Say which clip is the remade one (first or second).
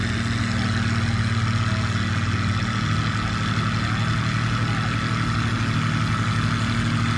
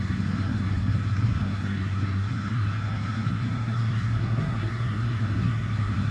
second